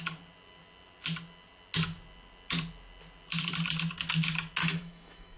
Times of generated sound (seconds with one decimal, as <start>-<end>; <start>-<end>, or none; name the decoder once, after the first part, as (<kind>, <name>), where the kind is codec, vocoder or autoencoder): 4.6-5.4 (autoencoder, DAC-VAE)